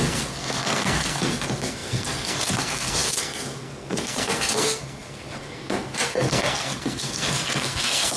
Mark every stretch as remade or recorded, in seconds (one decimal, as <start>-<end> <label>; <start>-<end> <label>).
0.0-8.2 remade